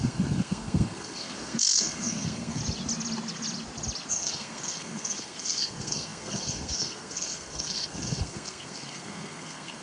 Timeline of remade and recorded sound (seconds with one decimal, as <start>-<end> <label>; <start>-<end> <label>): 0.0-2.6 remade; 2.6-4.1 recorded; 4.1-9.8 remade